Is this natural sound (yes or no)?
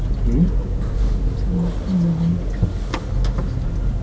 yes